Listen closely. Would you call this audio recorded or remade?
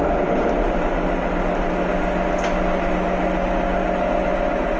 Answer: recorded